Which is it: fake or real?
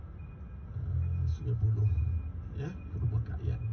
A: real